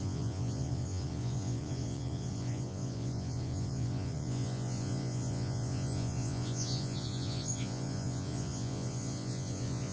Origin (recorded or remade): remade